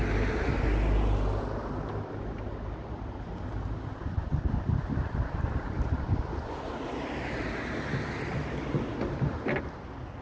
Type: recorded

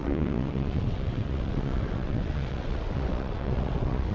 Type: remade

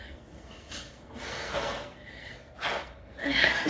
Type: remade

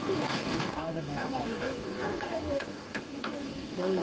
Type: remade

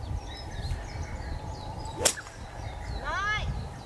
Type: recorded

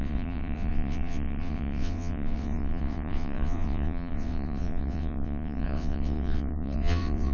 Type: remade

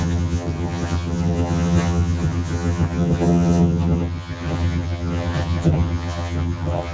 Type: remade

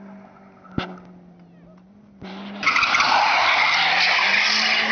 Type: recorded